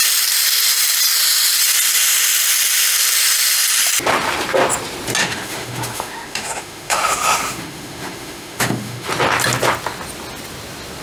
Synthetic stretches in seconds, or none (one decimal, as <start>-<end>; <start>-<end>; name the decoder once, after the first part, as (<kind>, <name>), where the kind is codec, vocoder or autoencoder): 5.2-9.1 (autoencoder, DAC-VAE)